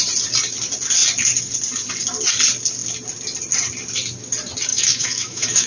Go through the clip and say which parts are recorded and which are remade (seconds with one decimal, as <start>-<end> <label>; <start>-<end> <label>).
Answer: 0.0-4.7 recorded; 4.7-5.7 remade